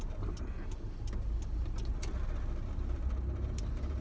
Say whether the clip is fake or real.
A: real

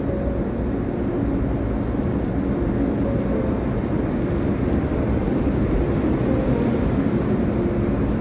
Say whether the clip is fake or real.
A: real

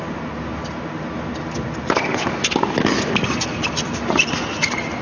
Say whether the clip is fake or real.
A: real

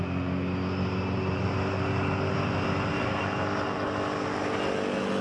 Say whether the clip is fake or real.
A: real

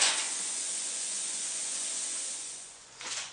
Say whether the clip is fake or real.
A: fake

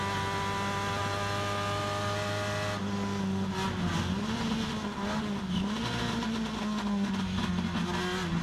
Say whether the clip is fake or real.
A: real